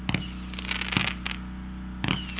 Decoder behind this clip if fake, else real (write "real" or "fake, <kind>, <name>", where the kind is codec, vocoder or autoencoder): real